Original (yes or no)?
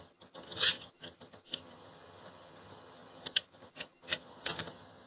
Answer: no